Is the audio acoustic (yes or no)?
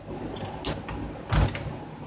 yes